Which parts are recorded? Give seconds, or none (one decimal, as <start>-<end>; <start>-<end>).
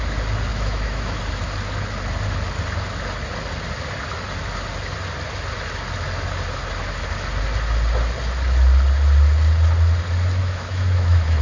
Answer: 0.0-0.5; 1.2-10.4